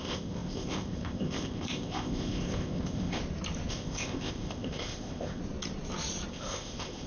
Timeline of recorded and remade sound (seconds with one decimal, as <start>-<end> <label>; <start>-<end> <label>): 0.0-3.2 remade; 3.2-3.7 recorded; 3.7-5.4 remade; 5.4-6.3 recorded; 6.3-7.1 remade